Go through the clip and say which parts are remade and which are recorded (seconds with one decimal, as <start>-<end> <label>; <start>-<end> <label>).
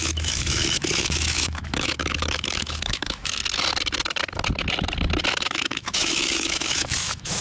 0.0-3.4 remade; 3.4-5.3 recorded; 5.3-7.4 remade